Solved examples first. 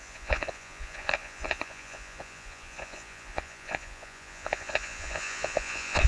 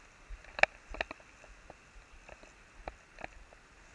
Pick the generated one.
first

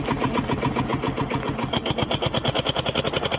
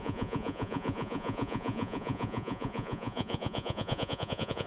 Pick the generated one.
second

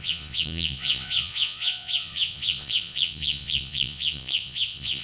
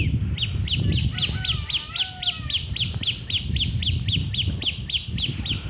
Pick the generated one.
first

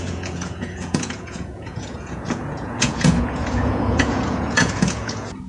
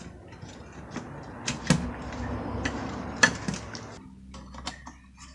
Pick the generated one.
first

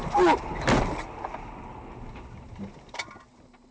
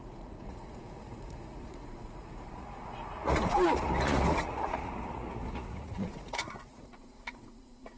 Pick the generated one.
second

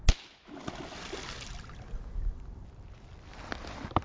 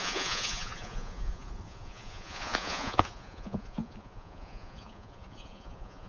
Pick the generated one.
second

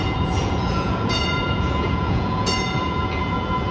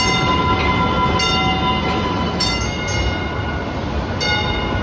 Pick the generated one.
first